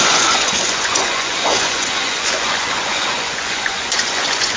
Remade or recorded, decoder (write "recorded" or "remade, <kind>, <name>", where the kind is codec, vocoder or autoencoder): remade, vocoder, Vocos